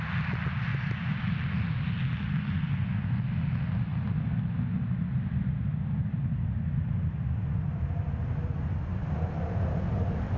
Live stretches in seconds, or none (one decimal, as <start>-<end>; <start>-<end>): 0.0-0.7; 1.2-10.4

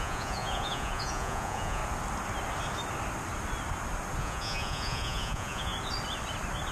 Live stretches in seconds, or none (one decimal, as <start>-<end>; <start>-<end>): 1.8-4.2; 5.7-6.7

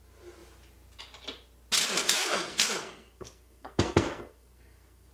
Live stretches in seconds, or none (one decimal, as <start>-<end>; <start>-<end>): 0.0-2.0

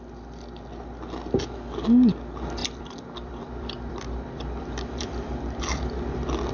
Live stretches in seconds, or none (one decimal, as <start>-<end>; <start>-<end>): 0.0-2.6; 5.6-6.5

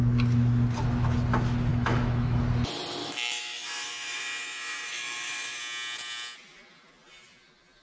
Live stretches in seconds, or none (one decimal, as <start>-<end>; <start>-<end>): 0.0-1.7; 2.4-3.0; 5.6-7.8